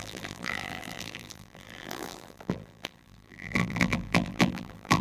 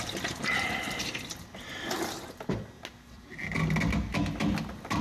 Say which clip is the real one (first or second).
second